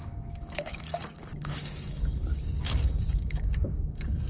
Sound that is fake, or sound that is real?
fake